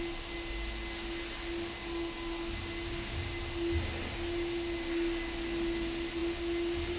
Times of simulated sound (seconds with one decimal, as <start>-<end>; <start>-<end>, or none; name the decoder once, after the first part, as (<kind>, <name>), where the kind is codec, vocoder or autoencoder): none